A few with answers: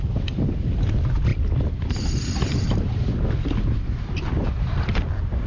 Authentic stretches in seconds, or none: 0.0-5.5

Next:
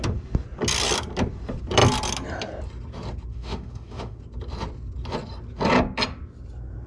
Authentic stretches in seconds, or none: 0.0-3.3; 4.2-6.9

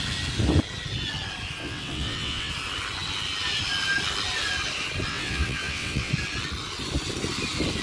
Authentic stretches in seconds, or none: 0.0-1.6; 2.5-5.1; 6.1-7.8

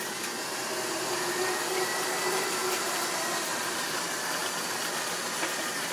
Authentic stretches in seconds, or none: 0.0-2.6; 4.2-5.9